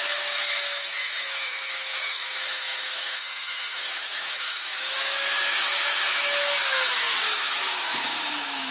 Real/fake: fake